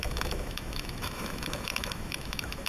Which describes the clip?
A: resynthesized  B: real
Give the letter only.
A